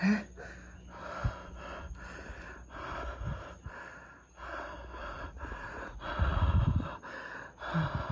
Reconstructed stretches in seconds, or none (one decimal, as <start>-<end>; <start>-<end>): 5.0-6.6